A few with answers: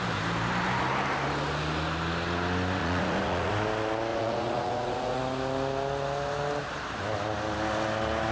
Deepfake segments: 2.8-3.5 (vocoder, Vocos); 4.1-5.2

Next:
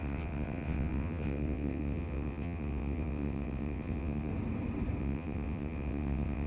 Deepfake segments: 0.0-4.3 (vocoder, WaveNeXt); 5.0-6.5

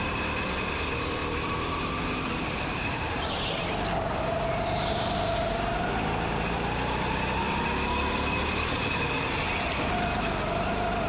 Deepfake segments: 1.2-5.9 (vocoder, BigVGAN v2)